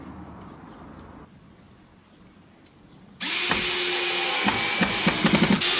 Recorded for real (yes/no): yes